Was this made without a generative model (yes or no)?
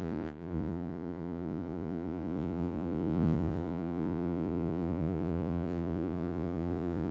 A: no